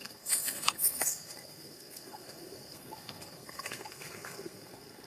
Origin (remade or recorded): remade